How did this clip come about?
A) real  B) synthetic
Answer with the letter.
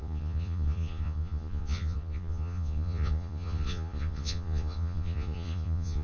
B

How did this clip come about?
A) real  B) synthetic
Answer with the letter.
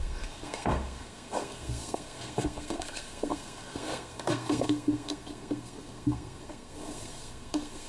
B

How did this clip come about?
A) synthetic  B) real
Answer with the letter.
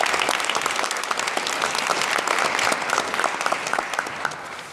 B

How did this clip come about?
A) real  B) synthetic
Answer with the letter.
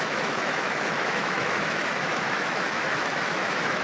B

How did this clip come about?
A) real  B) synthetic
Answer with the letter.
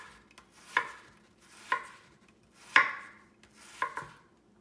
A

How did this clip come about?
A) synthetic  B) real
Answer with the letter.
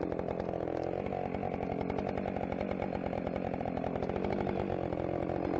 A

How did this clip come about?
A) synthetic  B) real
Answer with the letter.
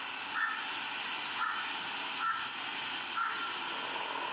B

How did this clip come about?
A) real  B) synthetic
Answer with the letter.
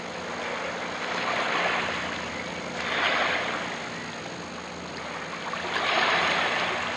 A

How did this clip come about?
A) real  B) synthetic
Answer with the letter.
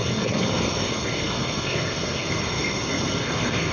B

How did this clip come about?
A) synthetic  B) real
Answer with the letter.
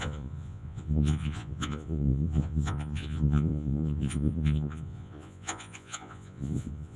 A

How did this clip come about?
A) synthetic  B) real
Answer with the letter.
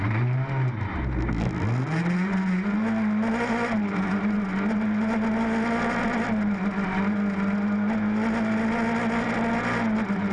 B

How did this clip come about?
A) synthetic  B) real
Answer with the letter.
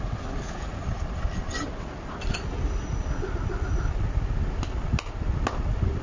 B